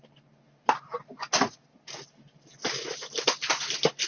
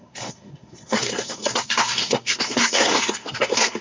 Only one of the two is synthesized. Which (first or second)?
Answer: second